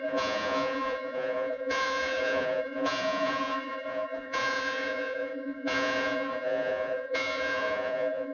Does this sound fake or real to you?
fake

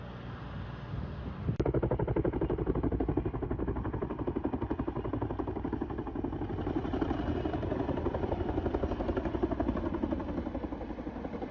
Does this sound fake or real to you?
real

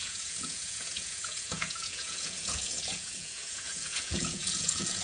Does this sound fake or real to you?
fake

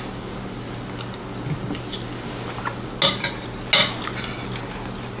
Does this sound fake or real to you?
real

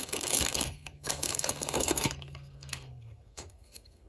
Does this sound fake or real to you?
fake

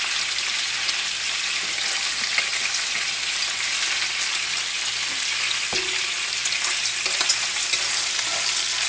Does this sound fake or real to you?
real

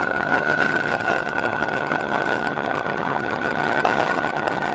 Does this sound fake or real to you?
fake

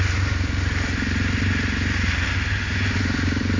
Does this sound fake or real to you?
real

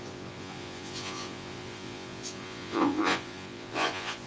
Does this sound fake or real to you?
fake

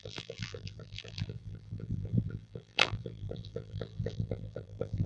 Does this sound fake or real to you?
fake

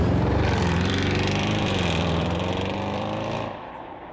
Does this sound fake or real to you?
fake